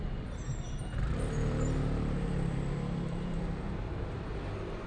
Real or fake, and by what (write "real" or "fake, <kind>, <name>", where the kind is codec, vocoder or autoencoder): fake, vocoder, BigVGAN v2